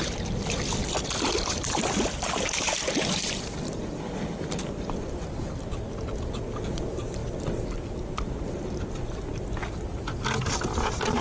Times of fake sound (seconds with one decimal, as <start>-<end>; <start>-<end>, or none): none